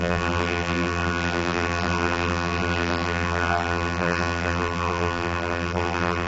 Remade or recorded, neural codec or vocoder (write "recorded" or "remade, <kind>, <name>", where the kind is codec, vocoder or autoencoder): remade, vocoder, BigVGAN v2